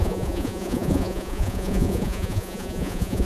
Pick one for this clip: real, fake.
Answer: fake